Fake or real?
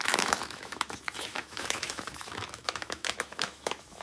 fake